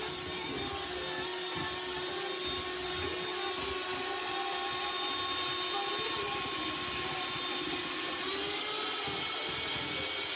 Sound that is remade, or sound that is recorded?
recorded